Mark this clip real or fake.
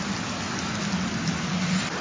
real